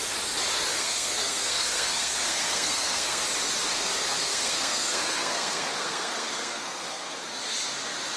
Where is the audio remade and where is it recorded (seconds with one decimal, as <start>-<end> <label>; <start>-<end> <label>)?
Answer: 0.0-0.7 recorded; 0.7-3.2 remade; 3.2-3.7 recorded; 3.7-7.2 remade; 7.2-8.2 recorded